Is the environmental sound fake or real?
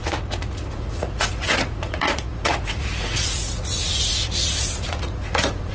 fake